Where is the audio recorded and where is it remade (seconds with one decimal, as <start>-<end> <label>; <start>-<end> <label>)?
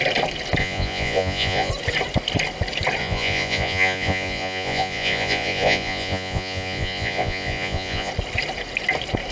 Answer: 0.0-0.6 recorded; 0.6-1.7 remade; 1.7-3.0 recorded; 3.0-8.1 remade; 8.1-9.3 recorded